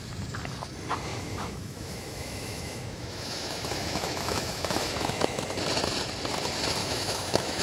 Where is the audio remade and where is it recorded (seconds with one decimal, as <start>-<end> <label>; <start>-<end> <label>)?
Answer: 0.0-1.1 recorded; 1.1-5.4 remade; 5.4-6.8 recorded; 6.8-7.6 remade

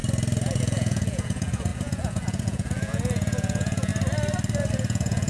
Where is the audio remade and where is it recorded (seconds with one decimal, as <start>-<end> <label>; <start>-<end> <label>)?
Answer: 0.0-0.6 recorded; 0.6-3.9 remade; 3.9-4.7 recorded; 4.7-5.3 remade

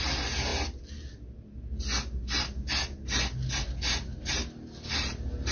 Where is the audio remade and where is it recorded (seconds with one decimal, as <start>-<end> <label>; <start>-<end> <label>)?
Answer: 0.0-5.5 recorded

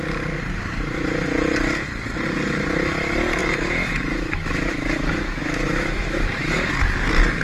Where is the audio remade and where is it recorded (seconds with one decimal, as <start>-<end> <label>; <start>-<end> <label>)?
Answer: 0.0-3.4 recorded; 3.4-6.7 remade; 6.7-7.4 recorded

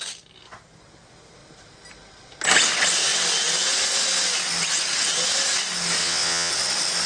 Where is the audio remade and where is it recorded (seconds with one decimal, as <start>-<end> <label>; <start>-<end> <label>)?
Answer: 0.0-6.0 recorded; 6.0-6.5 remade; 6.5-7.1 recorded

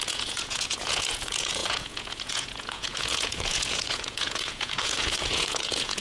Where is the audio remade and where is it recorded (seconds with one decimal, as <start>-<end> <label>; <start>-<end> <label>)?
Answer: 0.0-6.0 remade

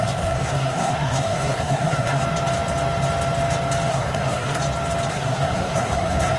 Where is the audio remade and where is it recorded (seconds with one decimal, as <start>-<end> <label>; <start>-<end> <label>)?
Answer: 0.0-2.2 remade; 2.2-3.9 recorded; 3.9-4.6 remade; 4.6-5.1 recorded; 5.1-6.4 remade

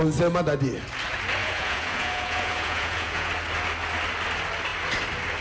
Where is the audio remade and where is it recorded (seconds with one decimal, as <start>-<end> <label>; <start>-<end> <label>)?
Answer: 0.0-1.4 recorded; 1.4-3.3 remade; 3.3-5.4 recorded